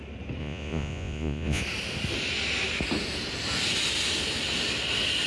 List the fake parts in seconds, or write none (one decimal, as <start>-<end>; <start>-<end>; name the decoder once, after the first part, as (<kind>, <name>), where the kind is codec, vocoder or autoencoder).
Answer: 0.4-1.6 (vocoder, Vocos)